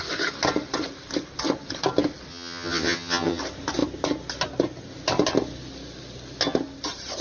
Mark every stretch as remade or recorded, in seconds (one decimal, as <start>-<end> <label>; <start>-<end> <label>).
0.0-2.3 recorded; 2.3-3.4 remade; 3.4-7.2 recorded